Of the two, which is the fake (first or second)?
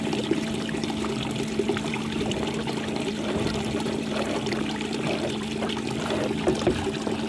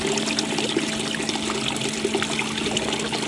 first